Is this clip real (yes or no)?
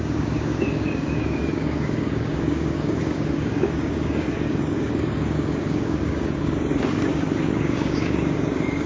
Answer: no